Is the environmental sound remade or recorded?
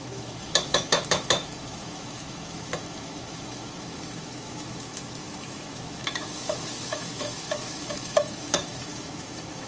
remade